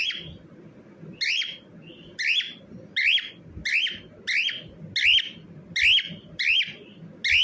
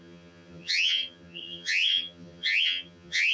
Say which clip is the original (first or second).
first